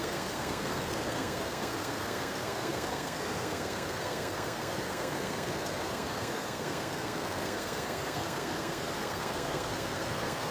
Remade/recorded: remade